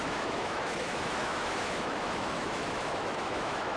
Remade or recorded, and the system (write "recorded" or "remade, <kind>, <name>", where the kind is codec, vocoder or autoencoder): remade, autoencoder, DAC-VAE